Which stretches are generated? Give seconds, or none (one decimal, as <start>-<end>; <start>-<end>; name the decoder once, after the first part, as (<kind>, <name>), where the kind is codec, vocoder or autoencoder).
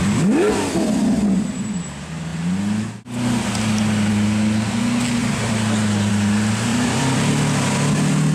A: 5.2-6.1 (vocoder, BigVGAN v2); 6.7-7.3